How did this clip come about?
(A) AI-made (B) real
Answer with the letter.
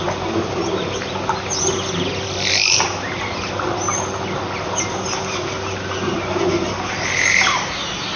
B